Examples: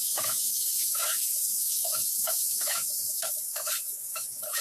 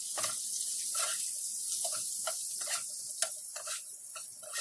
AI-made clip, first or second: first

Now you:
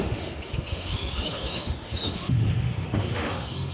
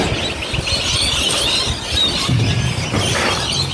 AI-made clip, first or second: first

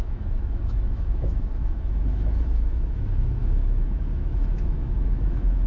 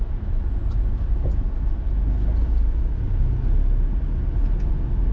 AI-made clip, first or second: first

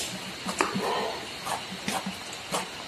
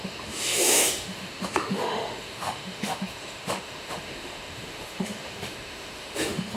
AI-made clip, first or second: second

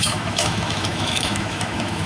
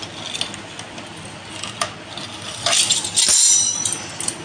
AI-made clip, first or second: first